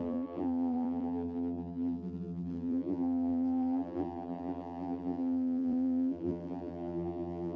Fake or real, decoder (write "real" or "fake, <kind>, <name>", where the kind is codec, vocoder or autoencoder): fake, vocoder, BigVGAN v2